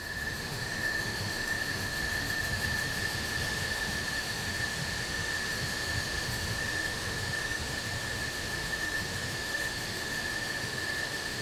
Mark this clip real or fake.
fake